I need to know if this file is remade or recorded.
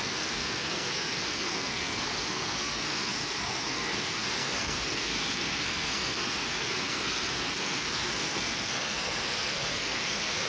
remade